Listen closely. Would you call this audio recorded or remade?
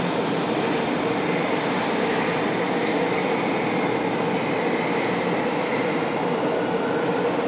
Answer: recorded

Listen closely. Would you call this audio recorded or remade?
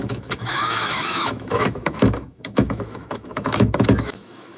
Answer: remade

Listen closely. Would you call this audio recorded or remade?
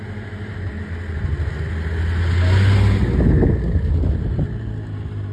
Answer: recorded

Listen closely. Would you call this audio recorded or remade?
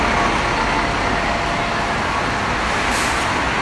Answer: recorded